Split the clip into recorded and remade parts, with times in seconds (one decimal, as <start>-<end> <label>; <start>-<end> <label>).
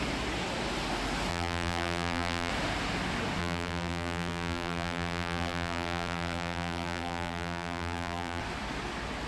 0.0-1.3 recorded; 1.3-2.5 remade; 2.5-3.4 recorded; 3.4-8.4 remade; 8.4-9.3 recorded